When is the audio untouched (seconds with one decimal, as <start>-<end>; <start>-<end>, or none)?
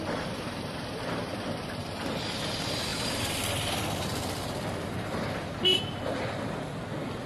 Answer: 0.0-1.3; 1.9-2.9; 6.0-7.3